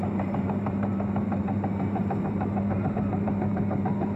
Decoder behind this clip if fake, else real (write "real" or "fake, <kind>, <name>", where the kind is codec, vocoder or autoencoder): fake, vocoder, BigVGAN v2